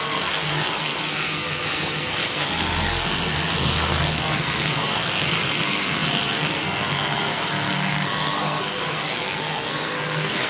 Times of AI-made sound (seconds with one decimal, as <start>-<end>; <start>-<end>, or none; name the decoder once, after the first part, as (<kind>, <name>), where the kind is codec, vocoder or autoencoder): 0.0-10.5 (codec, SNAC)